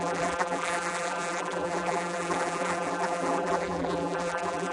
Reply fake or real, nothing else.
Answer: fake